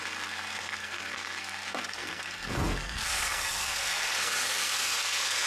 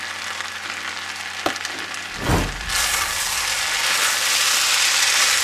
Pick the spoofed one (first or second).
first